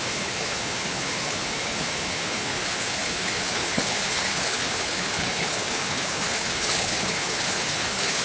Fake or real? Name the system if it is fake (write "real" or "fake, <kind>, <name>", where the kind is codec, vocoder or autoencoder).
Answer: fake, codec, HILCodec